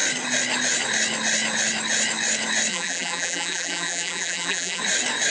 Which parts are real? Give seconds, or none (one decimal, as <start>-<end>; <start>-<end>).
0.0-2.7; 4.8-5.3